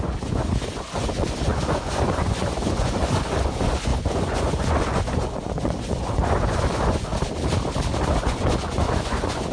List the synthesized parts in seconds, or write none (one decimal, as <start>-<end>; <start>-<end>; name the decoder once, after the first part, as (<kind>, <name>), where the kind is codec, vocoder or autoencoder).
0.0-7.1 (vocoder, Vocos); 8.0-9.5